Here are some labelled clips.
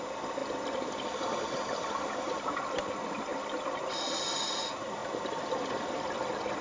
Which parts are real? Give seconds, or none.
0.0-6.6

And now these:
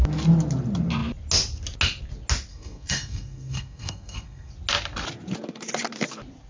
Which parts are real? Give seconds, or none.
0.0-2.5; 4.5-6.5

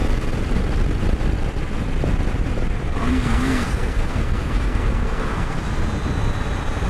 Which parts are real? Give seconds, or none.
0.0-3.1; 5.6-6.9

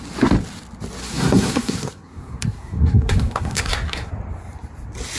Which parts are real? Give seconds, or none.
0.0-1.0; 4.1-5.2

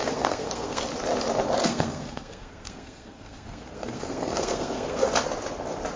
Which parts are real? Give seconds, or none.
0.8-1.6; 5.1-6.0

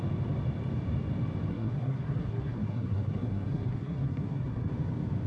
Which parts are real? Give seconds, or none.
0.0-1.5; 4.7-5.3

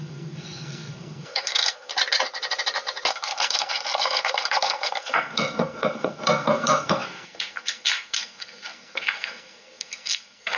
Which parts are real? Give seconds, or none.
1.9-3.1

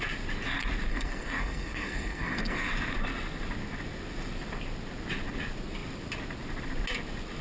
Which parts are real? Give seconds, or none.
0.0-0.9; 2.7-7.4